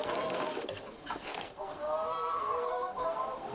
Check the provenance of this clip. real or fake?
fake